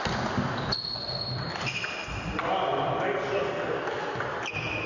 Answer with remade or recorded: recorded